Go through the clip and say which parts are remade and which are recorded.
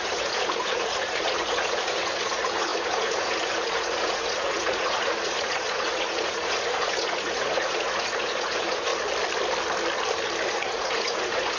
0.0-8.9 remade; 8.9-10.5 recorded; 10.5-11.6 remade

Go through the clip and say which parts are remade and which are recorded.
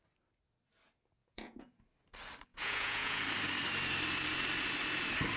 0.0-1.2 recorded; 1.2-1.8 remade; 1.8-2.5 recorded; 2.5-3.2 remade; 3.2-5.4 recorded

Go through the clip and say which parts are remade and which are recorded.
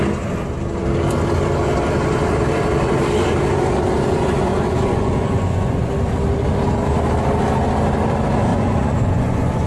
0.0-4.5 recorded; 4.5-5.9 remade; 5.9-8.5 recorded; 8.5-9.7 remade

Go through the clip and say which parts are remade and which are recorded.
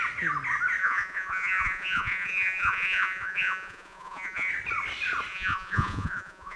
0.0-0.8 recorded; 0.8-4.5 remade; 4.5-5.3 recorded; 5.3-6.6 remade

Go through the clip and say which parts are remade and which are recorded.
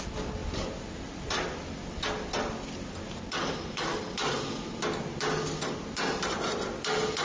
0.0-7.2 recorded